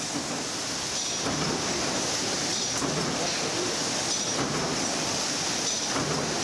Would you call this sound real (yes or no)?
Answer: yes